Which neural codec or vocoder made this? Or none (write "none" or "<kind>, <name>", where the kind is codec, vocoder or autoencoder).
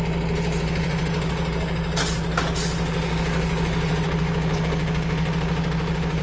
none